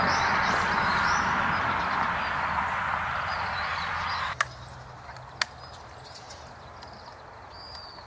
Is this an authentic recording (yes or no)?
yes